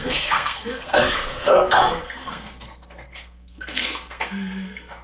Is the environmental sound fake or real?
fake